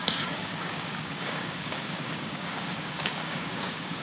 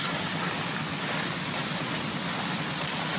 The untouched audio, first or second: second